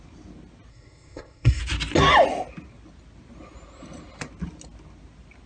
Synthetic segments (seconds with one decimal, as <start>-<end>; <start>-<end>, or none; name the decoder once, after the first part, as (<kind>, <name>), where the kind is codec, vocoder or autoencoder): 0.7-1.6 (codec, SNAC)

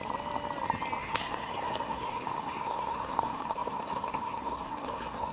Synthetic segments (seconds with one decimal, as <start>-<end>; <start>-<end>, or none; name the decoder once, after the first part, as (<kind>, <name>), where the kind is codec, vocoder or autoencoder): 1.0-5.3 (codec, SNAC)

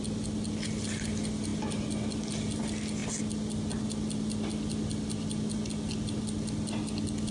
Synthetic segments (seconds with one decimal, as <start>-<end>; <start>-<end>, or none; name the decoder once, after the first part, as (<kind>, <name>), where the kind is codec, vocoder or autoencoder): none

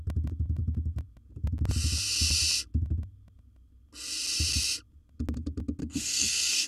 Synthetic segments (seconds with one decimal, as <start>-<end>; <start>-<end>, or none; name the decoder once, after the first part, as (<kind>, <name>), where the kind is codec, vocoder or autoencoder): 5.8-6.7 (codec, SNAC)

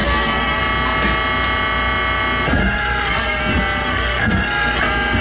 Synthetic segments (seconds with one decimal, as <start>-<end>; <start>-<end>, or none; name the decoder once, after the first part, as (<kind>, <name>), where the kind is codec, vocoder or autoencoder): 0.0-0.6 (codec, SNAC); 2.6-3.4; 3.9-4.8

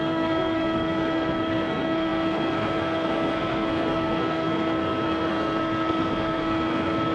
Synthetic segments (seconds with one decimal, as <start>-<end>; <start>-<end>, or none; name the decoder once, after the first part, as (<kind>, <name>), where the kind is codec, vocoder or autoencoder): 0.0-7.1 (codec, SNAC)

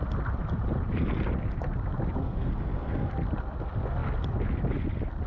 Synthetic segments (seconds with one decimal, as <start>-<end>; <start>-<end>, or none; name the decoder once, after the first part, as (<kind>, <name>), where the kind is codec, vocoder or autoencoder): 2.2-3.1 (codec, SNAC)

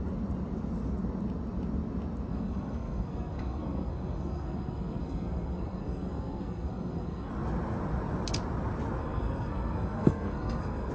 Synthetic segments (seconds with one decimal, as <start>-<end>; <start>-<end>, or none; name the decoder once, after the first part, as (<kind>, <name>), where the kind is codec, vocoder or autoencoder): 2.3-7.3 (codec, SNAC); 9.0-10.9